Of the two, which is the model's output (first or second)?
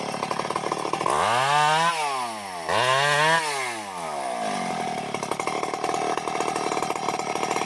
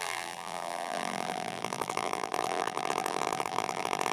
second